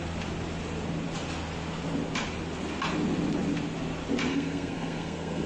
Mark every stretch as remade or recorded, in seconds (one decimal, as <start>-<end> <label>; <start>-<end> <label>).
0.0-4.3 recorded; 4.3-5.5 remade